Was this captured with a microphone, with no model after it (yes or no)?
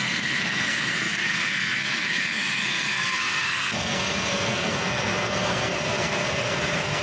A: no